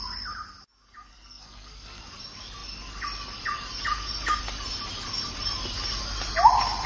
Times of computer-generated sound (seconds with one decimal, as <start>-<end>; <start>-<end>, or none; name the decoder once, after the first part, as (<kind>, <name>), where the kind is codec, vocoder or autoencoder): 1.1-2.0 (codec, SNAC)